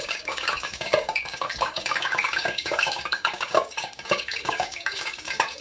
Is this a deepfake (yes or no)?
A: yes